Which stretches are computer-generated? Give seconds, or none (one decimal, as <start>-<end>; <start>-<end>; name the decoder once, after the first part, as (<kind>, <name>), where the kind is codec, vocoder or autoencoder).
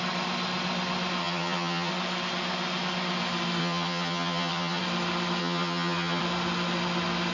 1.2-1.9 (vocoder, HiFi-GAN); 3.6-4.8; 5.4-6.2